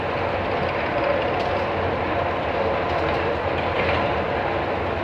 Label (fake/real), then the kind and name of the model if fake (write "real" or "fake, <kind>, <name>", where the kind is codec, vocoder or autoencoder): real